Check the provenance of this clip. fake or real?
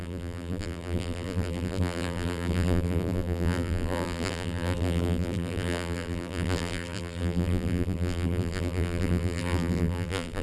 fake